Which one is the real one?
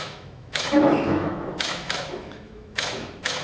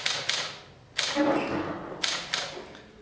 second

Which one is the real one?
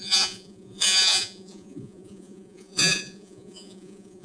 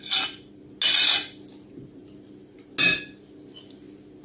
second